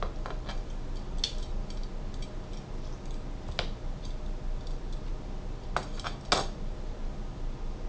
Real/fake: real